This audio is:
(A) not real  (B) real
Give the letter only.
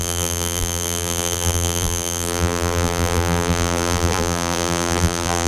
A